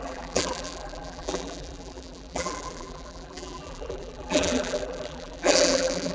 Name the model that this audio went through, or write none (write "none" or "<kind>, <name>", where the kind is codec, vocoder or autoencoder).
vocoder, BigVGAN v2